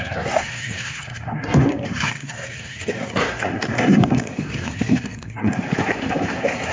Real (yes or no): no